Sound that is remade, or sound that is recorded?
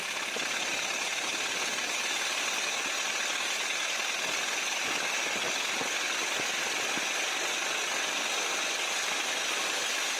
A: recorded